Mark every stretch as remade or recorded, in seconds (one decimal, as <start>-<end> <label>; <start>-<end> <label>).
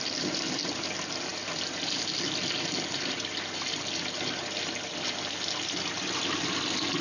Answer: 0.0-7.0 recorded